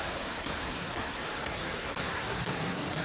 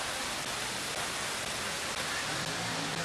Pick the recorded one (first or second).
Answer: second